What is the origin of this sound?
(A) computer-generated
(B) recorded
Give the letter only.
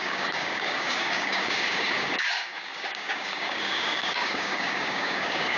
A